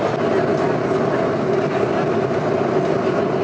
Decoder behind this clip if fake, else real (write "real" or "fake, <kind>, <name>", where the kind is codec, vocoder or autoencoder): real